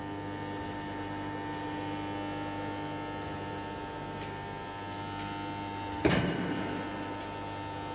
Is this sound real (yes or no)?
yes